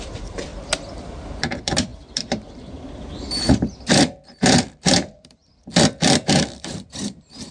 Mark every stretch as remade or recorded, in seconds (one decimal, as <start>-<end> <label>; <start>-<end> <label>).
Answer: 0.0-0.5 remade; 0.5-1.0 recorded; 1.0-5.4 remade; 5.4-6.3 recorded; 6.3-7.5 remade